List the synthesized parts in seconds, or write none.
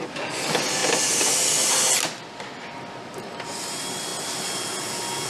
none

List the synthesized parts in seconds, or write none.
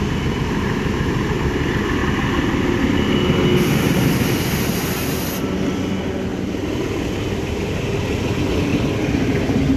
none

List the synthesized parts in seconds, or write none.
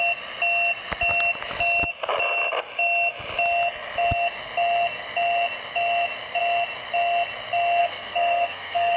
7.8-9.0 (codec, SNAC)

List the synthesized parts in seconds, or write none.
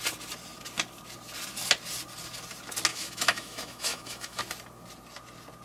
2.9-4.4 (autoencoder, DAC-VAE)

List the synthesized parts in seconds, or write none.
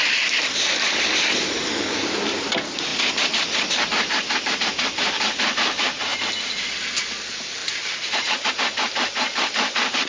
0.0-2.5 (vocoder, BigVGAN v2); 2.9-4.6; 7.6-8.5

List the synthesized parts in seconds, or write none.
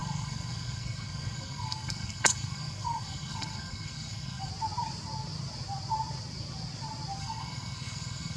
0.0-4.5 (codec, SNAC); 7.2-8.4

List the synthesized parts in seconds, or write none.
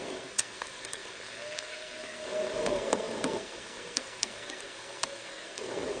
0.0-6.0 (codec, SNAC)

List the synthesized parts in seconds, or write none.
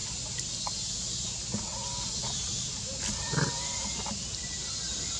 none